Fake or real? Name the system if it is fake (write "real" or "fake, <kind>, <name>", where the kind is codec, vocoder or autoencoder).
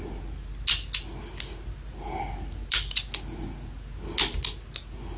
real